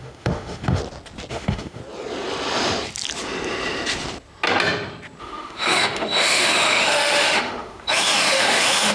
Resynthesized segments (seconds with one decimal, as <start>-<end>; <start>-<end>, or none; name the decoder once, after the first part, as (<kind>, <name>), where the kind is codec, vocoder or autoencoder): 0.0-0.8 (autoencoder, DAC-VAE); 1.3-1.8; 5.2-8.9